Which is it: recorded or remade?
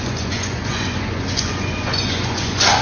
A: remade